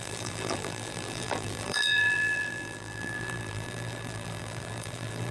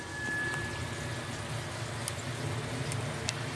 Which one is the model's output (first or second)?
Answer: first